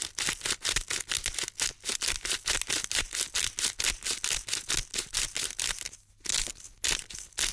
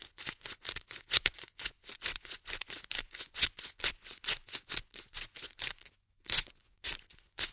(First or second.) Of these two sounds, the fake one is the second